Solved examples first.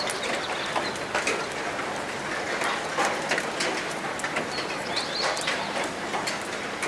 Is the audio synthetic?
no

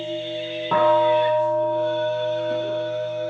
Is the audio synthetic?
yes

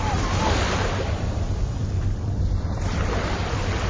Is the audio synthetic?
yes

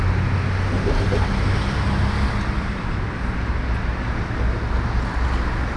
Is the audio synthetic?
no